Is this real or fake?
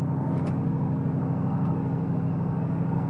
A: fake